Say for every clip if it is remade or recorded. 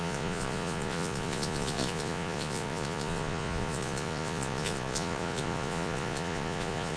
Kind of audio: remade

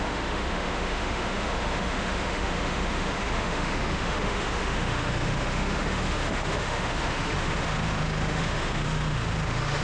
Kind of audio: remade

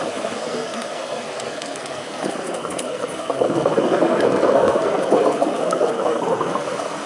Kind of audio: remade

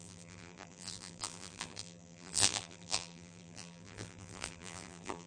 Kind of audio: remade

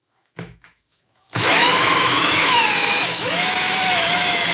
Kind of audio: remade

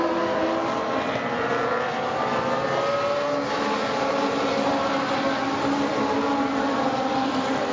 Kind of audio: recorded